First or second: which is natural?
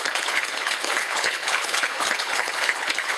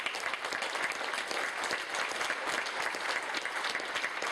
second